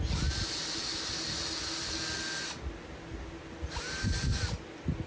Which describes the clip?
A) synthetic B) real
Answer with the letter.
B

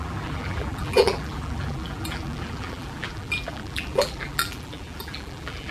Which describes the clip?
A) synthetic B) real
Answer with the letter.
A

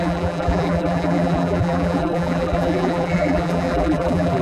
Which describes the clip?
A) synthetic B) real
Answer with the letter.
A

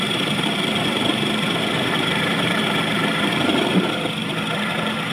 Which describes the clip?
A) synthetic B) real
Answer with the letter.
A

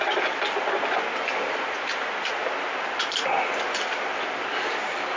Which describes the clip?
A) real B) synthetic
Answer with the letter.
A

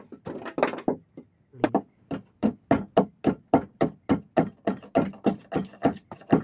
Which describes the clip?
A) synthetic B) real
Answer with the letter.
B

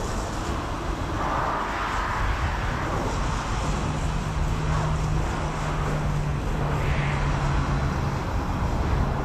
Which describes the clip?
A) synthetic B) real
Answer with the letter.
B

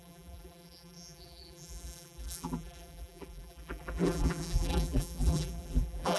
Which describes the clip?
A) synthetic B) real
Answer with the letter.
A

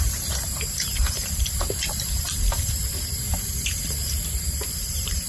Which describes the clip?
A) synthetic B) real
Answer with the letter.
A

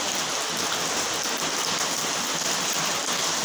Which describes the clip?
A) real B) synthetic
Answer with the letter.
A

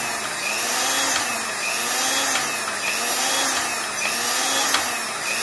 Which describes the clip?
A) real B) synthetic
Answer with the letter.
A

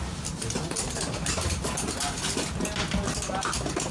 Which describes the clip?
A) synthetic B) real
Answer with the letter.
B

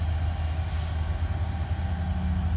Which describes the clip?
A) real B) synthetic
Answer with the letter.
A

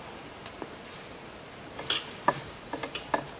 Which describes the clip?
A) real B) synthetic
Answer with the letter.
A